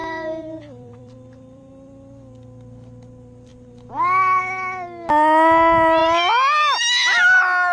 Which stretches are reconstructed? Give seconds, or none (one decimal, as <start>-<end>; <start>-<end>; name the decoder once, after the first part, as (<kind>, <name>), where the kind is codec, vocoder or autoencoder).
0.0-1.7 (vocoder, BigVGAN v2)